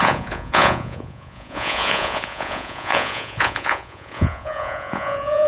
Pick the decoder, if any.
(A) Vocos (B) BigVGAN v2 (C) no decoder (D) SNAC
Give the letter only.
A